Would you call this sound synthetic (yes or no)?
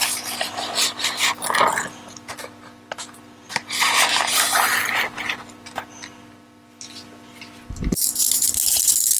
no